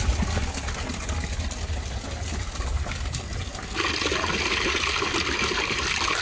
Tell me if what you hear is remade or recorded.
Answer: recorded